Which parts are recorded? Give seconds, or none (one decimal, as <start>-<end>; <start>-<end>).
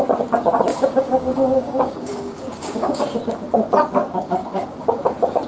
0.0-0.7; 3.0-4.0; 5.0-5.5